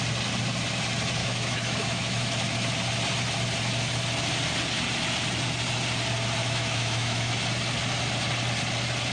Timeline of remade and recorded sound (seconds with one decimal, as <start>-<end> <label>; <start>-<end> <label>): 0.0-1.2 recorded; 1.2-2.3 remade; 2.3-6.4 recorded; 6.4-7.3 remade; 7.3-9.1 recorded